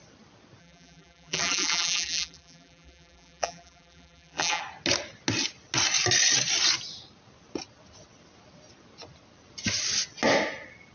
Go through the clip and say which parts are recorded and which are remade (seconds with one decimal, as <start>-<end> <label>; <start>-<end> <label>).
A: 0.0-0.6 recorded; 0.6-4.6 remade; 4.6-10.9 recorded